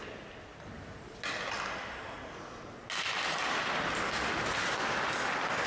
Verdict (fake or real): real